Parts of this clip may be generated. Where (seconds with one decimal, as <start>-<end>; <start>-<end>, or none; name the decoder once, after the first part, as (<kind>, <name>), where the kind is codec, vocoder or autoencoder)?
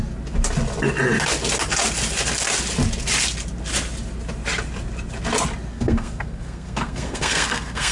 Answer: 5.7-7.9 (codec, SNAC)